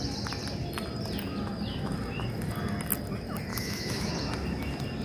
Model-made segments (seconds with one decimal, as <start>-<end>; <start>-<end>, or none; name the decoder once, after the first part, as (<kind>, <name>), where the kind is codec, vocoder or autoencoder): 3.5-4.1 (autoencoder, DAC-VAE)